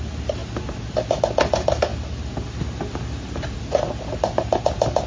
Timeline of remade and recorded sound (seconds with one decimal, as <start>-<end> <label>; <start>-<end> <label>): 0.0-5.1 recorded